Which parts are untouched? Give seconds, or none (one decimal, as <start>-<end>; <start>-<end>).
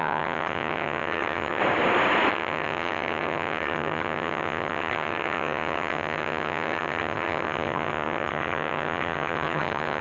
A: 1.6-2.3